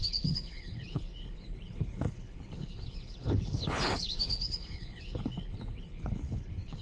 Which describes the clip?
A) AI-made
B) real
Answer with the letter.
A